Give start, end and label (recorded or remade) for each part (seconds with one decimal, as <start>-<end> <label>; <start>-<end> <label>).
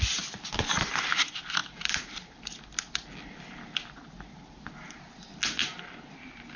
0.0-1.6 recorded; 1.6-2.6 remade; 2.6-6.6 recorded